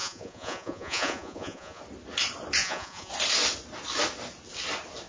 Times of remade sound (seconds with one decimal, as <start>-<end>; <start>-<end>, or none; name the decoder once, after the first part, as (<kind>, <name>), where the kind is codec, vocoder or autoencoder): 0.0-1.8 (vocoder, Vocos); 2.6-3.1